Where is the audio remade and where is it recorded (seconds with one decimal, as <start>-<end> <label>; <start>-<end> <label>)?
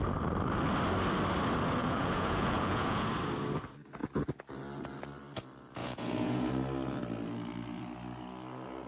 0.0-1.8 recorded; 1.8-3.1 remade; 3.1-5.8 recorded; 5.8-6.5 remade; 6.5-8.9 recorded